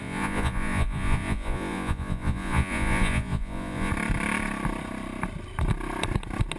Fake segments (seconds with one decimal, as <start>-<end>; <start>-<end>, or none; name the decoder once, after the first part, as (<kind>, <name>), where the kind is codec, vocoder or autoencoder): 0.0-3.9 (vocoder, Vocos)